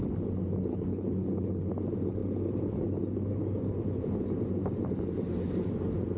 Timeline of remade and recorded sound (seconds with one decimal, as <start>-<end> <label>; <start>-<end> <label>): 0.0-0.7 recorded; 0.7-1.7 remade; 1.7-6.2 recorded